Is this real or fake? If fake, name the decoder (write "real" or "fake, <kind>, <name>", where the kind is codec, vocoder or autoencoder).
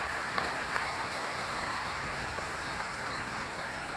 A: fake, codec, SNAC